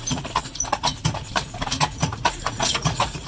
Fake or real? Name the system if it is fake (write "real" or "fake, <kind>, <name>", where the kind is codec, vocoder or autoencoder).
fake, vocoder, Vocos